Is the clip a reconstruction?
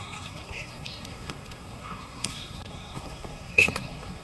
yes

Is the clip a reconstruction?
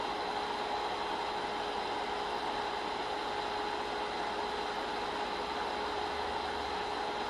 no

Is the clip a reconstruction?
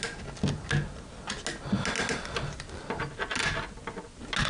no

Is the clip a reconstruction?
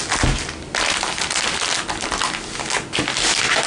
no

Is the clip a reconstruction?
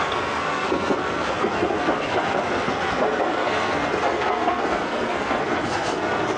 yes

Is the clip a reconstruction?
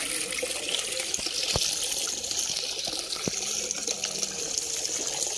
no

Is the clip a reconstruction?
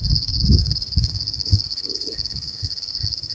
yes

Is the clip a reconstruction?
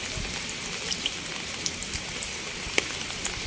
no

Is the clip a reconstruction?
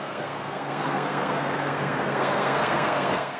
yes